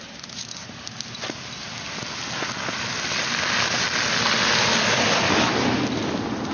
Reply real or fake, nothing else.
real